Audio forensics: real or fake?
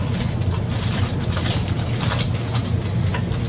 real